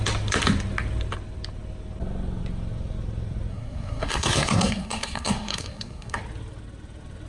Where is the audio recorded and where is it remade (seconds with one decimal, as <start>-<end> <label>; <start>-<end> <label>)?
0.0-3.5 recorded; 3.5-6.2 remade; 6.2-7.3 recorded